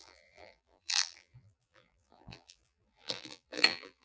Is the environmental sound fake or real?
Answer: fake